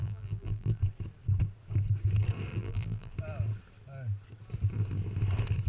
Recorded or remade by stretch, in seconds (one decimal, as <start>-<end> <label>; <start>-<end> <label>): 0.0-0.8 remade; 0.8-2.5 recorded; 2.5-3.1 remade; 3.1-5.7 recorded